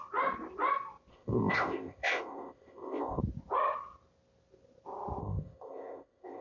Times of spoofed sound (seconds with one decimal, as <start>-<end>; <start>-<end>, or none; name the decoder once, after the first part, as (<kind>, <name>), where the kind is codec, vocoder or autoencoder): 1.1-3.2 (codec, ZipCodec); 5.2-6.4